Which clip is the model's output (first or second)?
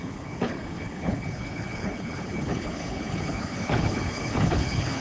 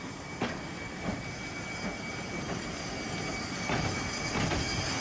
first